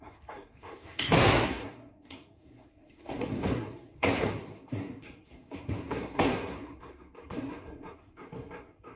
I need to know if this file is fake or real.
fake